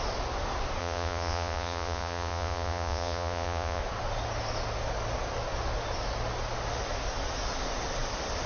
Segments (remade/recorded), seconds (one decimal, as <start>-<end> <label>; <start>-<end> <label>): 0.0-0.8 recorded; 0.8-3.8 remade; 3.8-8.5 recorded